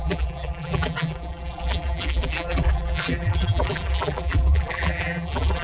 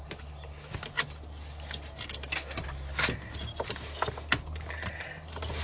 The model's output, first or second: first